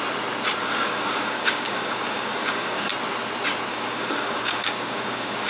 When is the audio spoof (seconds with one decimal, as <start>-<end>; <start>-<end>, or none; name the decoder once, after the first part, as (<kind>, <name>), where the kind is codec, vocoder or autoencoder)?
0.6-2.9 (codec, DAC); 3.7-5.5